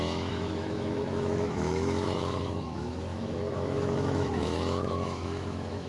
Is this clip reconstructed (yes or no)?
yes